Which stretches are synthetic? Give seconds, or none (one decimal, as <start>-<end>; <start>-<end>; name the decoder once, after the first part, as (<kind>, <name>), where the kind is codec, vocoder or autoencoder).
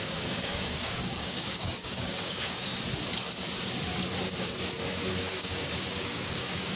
0.0-2.7 (codec, DAC); 5.1-6.8